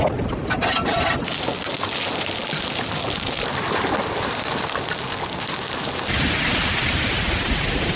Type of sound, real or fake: real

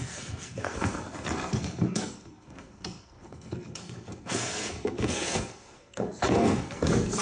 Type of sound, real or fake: fake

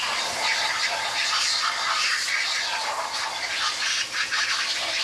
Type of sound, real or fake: real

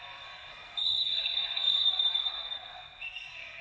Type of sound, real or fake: fake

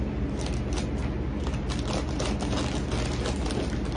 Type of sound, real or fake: real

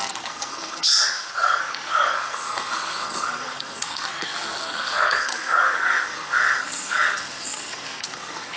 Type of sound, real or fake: fake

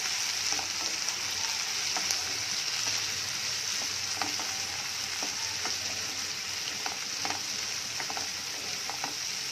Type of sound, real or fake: real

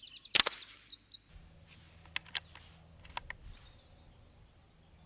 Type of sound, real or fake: real